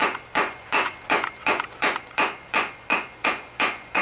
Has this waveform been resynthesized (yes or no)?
yes